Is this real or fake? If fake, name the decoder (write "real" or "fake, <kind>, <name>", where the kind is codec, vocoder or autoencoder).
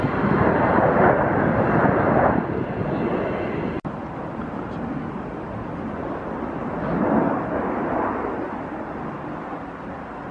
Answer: real